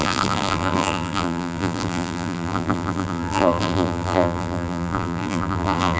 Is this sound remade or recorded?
remade